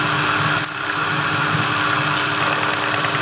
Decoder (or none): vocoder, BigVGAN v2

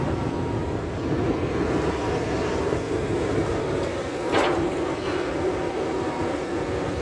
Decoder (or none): none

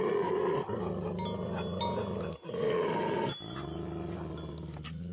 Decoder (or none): none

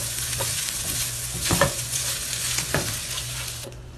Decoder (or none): vocoder, Vocos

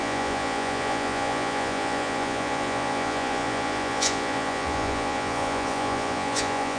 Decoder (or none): vocoder, Vocos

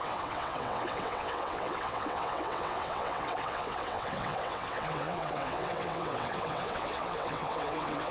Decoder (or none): vocoder, WaveNeXt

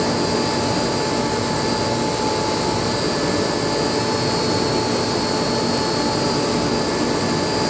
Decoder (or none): none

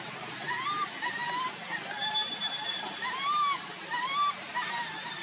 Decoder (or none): none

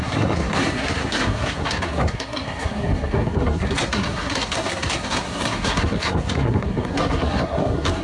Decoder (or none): codec, SNAC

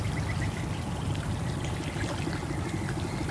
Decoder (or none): none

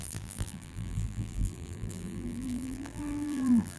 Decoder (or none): vocoder, BigVGAN v2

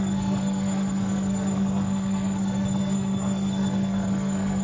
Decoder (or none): codec, SNAC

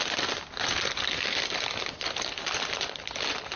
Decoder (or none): none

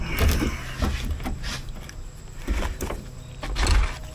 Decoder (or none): none